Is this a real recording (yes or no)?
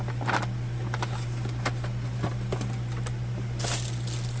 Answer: yes